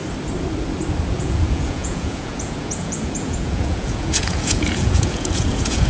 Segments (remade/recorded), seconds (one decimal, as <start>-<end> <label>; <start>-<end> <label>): 0.0-1.1 recorded; 1.1-5.9 remade